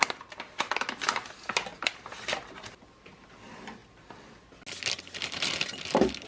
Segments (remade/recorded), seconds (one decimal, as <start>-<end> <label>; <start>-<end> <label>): 0.0-1.7 recorded; 1.7-2.3 remade; 2.3-6.3 recorded